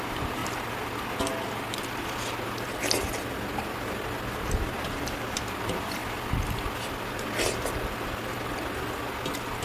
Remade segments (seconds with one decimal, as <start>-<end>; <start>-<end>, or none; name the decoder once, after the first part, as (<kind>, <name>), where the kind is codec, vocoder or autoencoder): 0.0-0.4 (vocoder, BigVGAN v2); 4.3-6.0